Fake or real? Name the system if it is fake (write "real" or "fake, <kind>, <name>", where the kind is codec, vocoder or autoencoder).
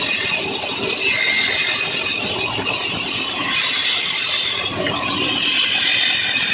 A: real